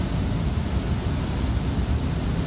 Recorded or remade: recorded